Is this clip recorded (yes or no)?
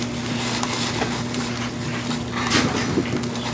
yes